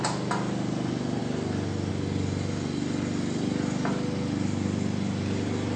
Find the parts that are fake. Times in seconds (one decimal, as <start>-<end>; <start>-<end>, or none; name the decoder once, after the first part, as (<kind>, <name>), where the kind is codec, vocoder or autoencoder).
none